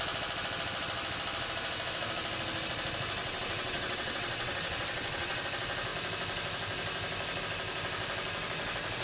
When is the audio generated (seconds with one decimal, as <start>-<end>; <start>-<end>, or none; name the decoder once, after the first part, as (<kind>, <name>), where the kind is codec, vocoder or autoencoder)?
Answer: 3.2-5.4 (vocoder, WaveNeXt)